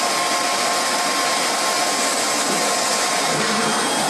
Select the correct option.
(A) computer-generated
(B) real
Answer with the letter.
B